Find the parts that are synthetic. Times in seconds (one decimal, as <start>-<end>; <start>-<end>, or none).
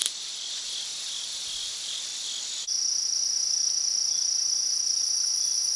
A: 0.9-1.7